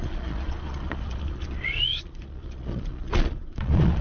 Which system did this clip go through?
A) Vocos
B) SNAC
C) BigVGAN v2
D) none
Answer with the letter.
A